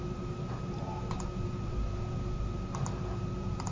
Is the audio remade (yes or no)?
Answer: no